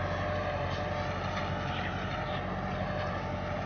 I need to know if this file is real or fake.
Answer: real